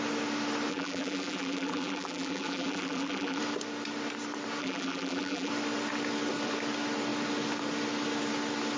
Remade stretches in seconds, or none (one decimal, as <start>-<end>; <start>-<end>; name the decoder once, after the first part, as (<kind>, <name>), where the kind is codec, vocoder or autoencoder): 0.7-3.4 (vocoder, BigVGAN v2); 4.6-5.5